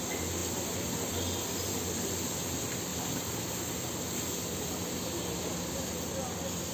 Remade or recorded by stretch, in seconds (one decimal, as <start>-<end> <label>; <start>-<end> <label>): 0.0-6.7 recorded